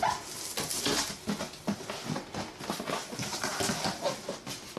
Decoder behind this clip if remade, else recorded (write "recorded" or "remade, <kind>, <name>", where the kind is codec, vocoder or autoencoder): recorded